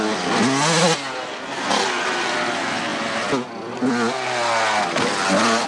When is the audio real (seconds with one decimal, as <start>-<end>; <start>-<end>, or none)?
0.0-5.7